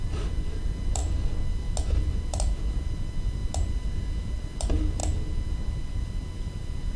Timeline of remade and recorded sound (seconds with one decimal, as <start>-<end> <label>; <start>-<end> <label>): 0.0-1.0 remade; 1.0-2.1 recorded; 2.1-3.4 remade; 3.4-4.3 recorded; 4.3-5.0 remade; 5.0-5.8 recorded; 5.8-7.0 remade